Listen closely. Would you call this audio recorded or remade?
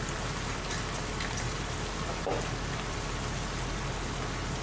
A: recorded